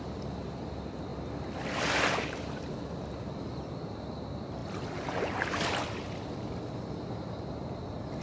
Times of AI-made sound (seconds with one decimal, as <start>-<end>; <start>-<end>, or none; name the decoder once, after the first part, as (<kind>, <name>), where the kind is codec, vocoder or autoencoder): 1.1-2.0 (vocoder, BigVGAN v2)